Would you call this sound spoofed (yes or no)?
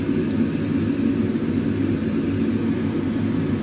no